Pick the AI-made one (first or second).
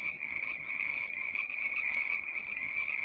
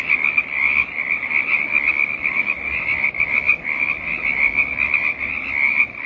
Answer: first